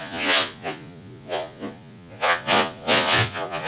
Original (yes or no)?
no